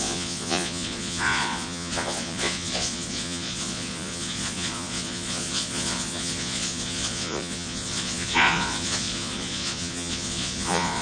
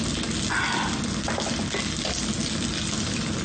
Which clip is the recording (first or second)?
second